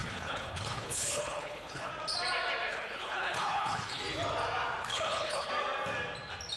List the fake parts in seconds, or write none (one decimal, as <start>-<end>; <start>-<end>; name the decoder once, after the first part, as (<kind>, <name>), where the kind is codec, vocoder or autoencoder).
0.0-1.9 (codec, HILCodec); 2.7-4.0; 4.9-5.5